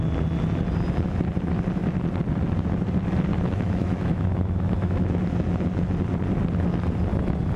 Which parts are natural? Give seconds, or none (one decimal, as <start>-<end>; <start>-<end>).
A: 0.0-3.3; 5.2-7.6